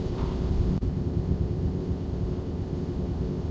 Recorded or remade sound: remade